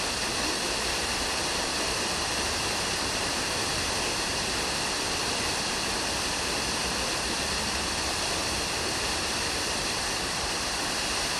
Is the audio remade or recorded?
remade